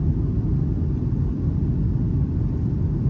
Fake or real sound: real